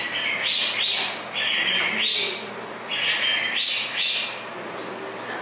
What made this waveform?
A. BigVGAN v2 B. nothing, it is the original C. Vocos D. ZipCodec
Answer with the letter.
B